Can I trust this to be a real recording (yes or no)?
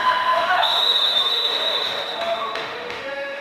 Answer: no